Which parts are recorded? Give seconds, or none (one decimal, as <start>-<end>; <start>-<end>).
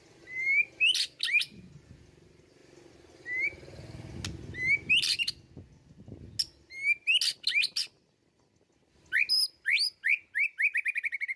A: 0.0-11.4